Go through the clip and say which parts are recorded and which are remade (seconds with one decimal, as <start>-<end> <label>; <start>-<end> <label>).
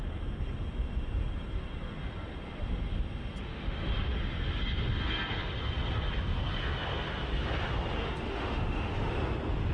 0.0-3.4 recorded; 3.4-4.1 remade; 4.1-8.0 recorded; 8.0-9.1 remade; 9.1-9.7 recorded